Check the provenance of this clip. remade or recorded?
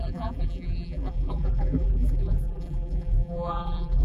remade